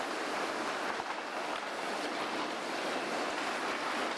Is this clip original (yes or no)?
yes